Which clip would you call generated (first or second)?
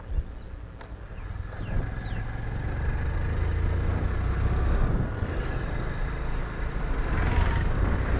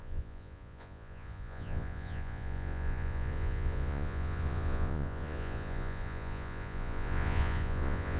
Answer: second